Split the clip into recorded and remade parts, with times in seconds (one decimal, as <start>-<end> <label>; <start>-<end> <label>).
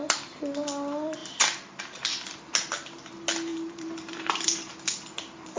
0.0-3.5 recorded; 3.5-4.7 remade; 4.7-5.6 recorded